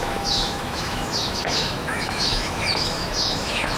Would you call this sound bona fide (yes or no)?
no